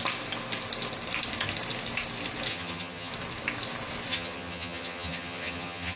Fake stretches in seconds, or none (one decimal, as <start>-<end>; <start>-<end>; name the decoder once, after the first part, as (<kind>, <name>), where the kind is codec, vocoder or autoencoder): 2.5-3.1 (vocoder, HiFi-GAN); 4.1-6.0